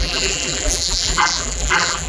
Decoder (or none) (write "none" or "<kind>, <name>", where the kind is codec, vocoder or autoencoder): vocoder, BigVGAN v2